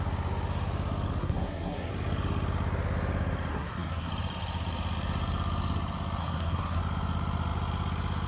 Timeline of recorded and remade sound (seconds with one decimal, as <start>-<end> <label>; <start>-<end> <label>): 0.0-1.2 recorded; 1.2-1.9 remade; 1.9-3.5 recorded; 3.5-4.1 remade; 4.1-6.2 recorded; 6.2-6.8 remade; 6.8-8.3 recorded